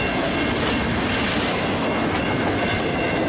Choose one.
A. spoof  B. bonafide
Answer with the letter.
B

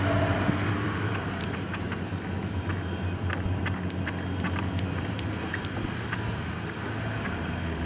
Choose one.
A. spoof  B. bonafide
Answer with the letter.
B